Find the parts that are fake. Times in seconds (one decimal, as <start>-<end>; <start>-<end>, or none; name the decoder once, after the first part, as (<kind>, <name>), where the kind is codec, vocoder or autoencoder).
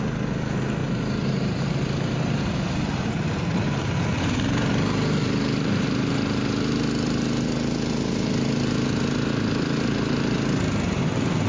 0.8-2.5 (vocoder, BigVGAN v2)